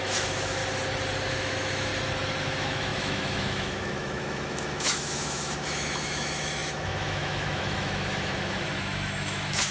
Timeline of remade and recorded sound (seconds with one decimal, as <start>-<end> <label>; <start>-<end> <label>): 0.0-0.6 remade; 0.6-1.3 recorded; 1.3-1.9 remade; 1.9-2.4 recorded; 2.4-9.7 remade